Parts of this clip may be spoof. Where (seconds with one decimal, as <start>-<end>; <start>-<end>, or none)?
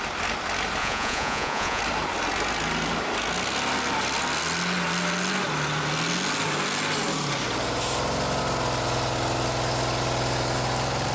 0.8-1.8